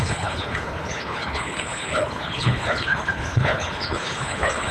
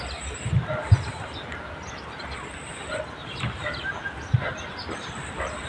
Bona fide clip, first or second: second